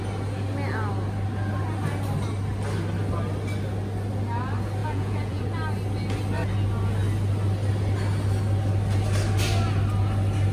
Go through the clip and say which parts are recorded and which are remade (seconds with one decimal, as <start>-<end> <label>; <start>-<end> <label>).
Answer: 0.0-4.8 recorded; 4.8-5.4 remade; 5.4-10.5 recorded